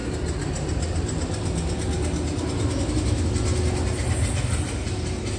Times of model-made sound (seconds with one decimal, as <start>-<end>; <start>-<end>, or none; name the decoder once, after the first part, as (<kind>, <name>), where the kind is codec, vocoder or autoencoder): none